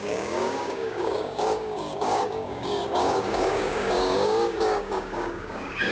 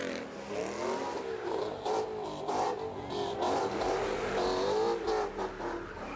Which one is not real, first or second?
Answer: first